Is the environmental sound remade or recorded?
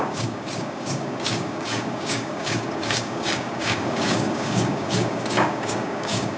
remade